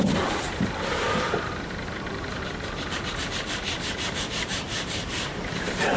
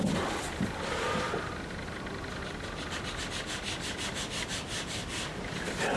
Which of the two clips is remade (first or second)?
first